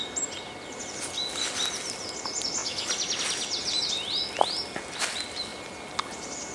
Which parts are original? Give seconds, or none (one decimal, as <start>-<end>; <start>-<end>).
0.0-6.5